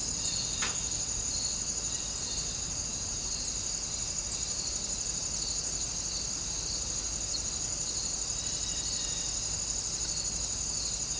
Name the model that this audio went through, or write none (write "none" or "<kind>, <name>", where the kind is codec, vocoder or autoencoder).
none